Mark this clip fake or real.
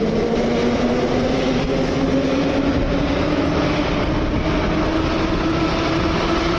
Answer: real